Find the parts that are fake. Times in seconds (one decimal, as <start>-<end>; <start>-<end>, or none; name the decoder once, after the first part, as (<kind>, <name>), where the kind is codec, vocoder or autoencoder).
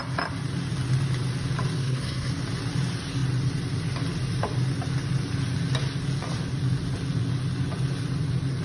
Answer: 1.8-2.3 (codec, SNAC)